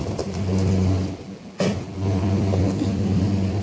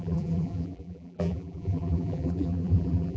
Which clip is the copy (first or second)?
second